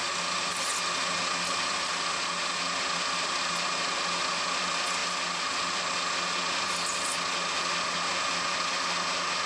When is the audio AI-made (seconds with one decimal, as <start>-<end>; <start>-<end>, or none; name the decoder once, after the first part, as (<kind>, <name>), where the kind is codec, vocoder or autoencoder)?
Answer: none